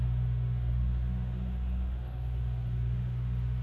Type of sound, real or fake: fake